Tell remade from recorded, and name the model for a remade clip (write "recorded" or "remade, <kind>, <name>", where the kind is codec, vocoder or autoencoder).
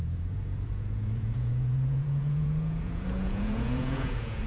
remade, vocoder, Vocos